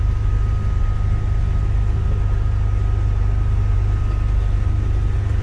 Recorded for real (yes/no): yes